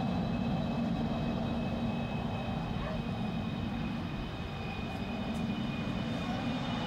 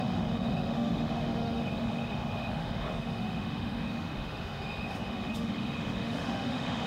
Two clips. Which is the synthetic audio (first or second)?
second